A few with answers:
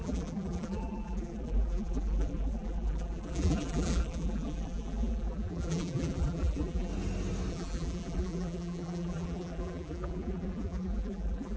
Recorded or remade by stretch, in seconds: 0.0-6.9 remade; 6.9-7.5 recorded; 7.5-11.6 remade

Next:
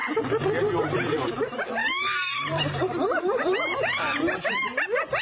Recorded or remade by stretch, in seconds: 0.0-1.8 recorded; 1.8-5.2 remade